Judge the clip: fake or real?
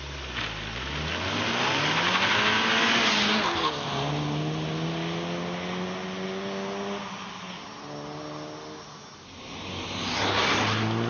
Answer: real